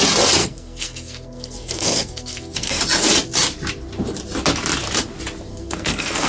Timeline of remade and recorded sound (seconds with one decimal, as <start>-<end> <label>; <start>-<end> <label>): 0.0-0.4 recorded; 0.4-2.8 remade; 2.8-5.5 recorded; 5.5-6.3 remade